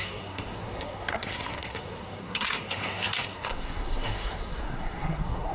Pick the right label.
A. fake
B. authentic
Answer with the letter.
A